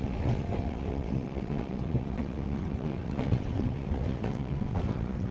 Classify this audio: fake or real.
fake